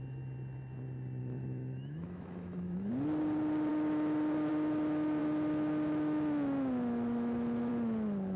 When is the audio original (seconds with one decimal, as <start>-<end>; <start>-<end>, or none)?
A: 0.0-1.2; 2.9-8.4